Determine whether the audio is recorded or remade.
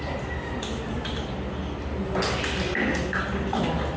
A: recorded